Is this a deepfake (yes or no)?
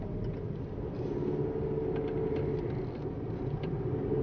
yes